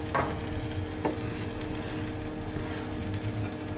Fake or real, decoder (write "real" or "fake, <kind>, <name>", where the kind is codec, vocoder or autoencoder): real